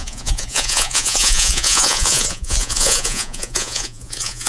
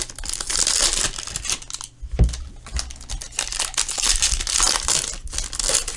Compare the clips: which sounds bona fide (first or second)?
second